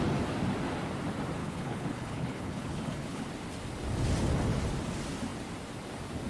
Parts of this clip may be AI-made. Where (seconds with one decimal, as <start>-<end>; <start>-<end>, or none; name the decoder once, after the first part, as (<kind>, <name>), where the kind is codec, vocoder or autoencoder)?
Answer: 1.4-3.2 (codec, HILCodec)